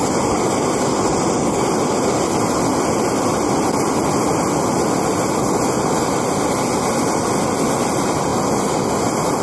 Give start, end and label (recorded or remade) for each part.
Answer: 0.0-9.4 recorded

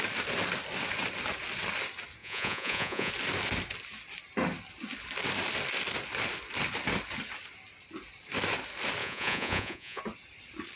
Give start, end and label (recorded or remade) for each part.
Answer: 0.0-2.2 recorded; 2.2-3.1 remade; 3.1-9.0 recorded; 9.0-10.0 remade; 10.0-10.8 recorded

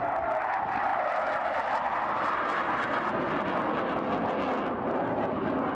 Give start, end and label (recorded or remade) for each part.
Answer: 0.0-5.7 recorded

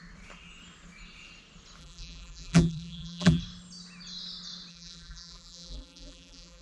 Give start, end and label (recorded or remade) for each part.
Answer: 0.0-1.8 recorded; 1.8-3.4 remade; 3.4-4.7 recorded; 4.7-6.6 remade

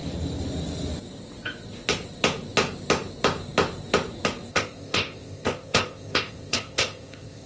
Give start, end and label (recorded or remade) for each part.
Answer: 0.0-4.5 recorded; 4.5-7.5 remade

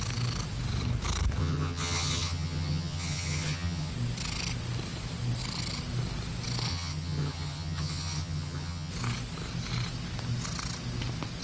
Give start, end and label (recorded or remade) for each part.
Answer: 0.0-1.4 recorded; 1.4-3.9 remade; 3.9-6.7 recorded; 6.7-8.9 remade; 8.9-11.4 recorded